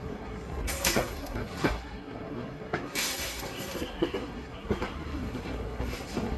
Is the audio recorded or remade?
remade